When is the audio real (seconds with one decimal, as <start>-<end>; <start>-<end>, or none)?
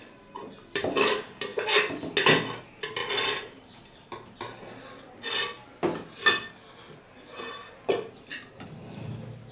0.0-9.5